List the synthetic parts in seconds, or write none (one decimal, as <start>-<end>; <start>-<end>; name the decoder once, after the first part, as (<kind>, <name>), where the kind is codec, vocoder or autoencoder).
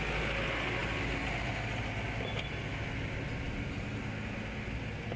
none